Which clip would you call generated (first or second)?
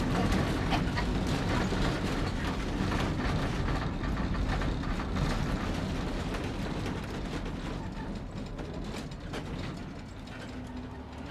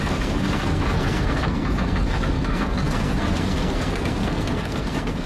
second